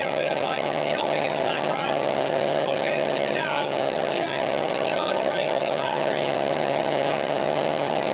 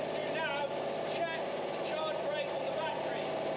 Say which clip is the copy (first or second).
first